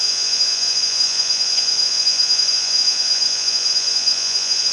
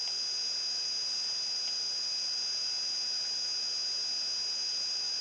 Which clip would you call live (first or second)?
second